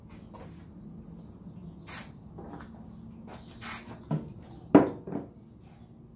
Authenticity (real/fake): real